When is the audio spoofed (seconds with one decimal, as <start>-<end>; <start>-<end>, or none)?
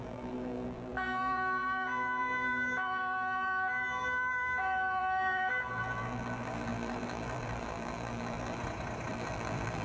0.0-8.6; 9.1-9.8